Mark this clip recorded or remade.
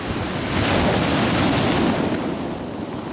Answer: recorded